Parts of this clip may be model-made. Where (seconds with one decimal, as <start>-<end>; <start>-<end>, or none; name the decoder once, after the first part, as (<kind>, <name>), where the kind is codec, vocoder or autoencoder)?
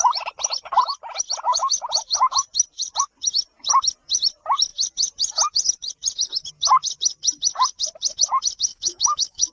8.7-9.5 (autoencoder, DAC-VAE)